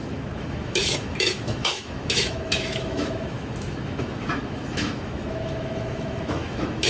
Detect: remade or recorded remade